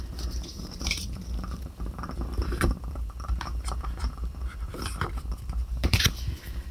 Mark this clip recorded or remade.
remade